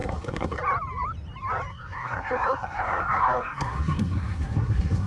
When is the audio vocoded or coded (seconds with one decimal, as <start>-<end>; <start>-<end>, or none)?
0.0-0.6; 1.7-5.1